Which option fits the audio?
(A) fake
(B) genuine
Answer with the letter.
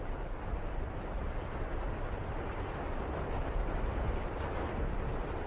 B